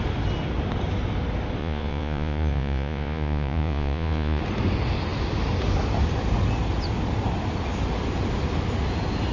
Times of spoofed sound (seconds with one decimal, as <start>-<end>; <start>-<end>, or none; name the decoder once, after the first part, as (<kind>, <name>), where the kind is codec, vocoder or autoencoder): 1.6-4.4 (vocoder, Vocos)